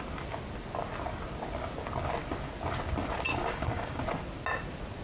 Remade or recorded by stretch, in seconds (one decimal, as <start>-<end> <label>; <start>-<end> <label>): 0.0-3.3 recorded; 3.3-4.0 remade; 4.0-5.0 recorded